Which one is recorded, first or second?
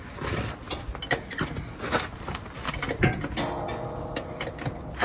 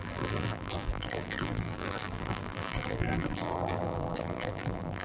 first